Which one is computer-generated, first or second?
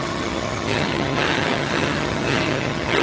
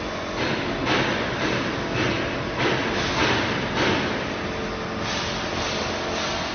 first